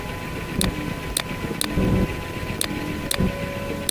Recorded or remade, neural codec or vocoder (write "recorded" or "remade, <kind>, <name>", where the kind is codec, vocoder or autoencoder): recorded